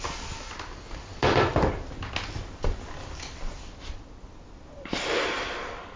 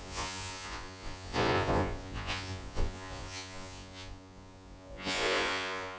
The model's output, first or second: second